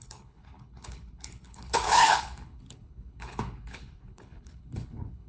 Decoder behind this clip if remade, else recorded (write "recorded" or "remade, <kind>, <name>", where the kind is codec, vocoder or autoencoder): remade, codec, HILCodec